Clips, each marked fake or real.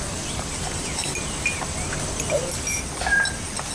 real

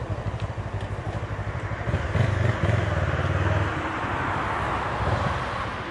real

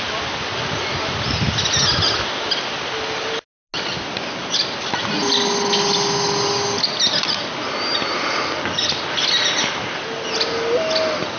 real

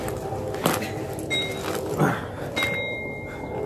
real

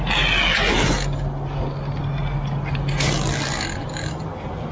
real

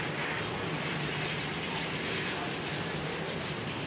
real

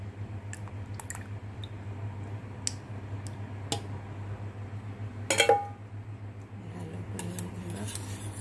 real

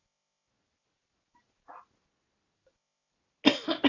real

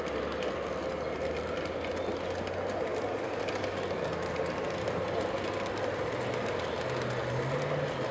real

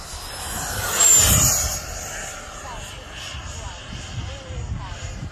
real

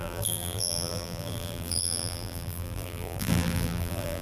fake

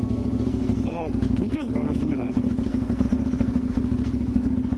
fake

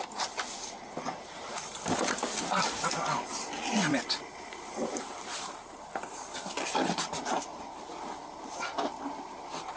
fake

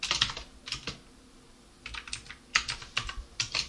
real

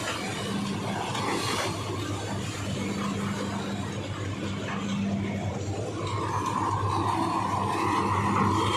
real